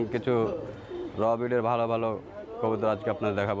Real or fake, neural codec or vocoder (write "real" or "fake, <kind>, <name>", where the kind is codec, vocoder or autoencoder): real